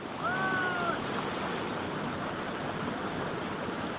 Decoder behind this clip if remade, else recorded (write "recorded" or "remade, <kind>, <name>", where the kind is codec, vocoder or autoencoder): recorded